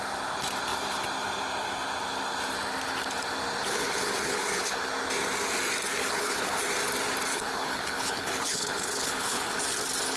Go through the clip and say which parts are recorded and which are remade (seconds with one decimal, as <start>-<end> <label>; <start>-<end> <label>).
0.0-3.6 recorded; 3.6-4.9 remade; 4.9-6.0 recorded; 6.0-6.6 remade; 6.6-7.3 recorded; 7.3-9.6 remade; 9.6-10.2 recorded